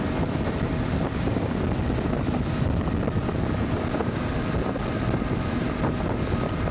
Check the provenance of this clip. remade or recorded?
recorded